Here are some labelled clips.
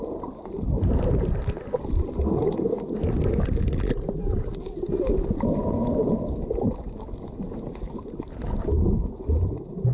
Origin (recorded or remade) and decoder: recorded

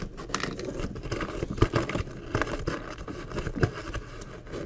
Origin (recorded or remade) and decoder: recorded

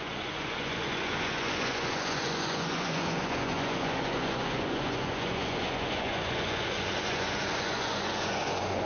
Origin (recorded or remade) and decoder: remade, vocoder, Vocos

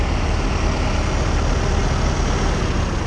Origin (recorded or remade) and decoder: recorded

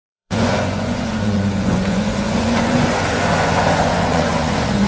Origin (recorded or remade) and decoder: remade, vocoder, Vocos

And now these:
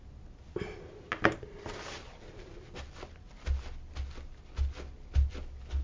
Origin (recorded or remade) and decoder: recorded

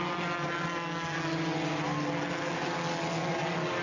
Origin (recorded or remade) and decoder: recorded